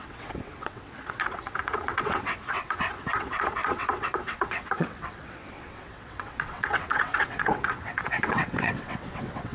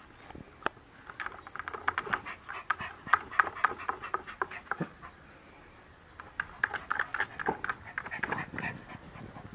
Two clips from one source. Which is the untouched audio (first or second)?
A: second